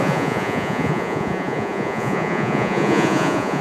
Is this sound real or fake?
fake